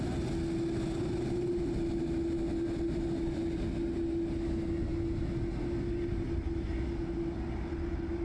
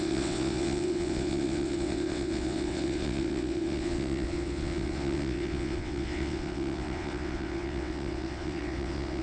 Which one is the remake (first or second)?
second